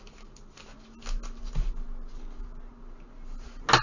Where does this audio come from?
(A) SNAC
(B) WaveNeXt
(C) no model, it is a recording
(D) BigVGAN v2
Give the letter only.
C